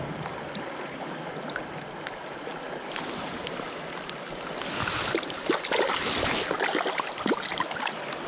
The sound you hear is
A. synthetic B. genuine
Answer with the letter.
B